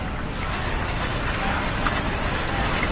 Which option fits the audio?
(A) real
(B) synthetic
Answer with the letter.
A